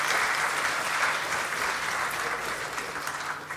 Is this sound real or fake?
real